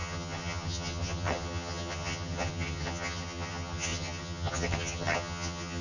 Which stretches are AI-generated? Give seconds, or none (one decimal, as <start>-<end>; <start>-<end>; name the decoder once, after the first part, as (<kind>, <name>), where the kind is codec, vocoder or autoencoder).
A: 0.0-5.8 (vocoder, HiFi-GAN)